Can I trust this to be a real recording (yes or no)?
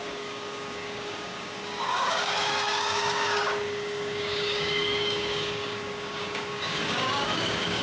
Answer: no